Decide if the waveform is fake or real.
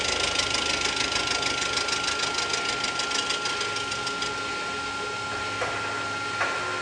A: real